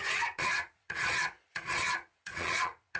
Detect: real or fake fake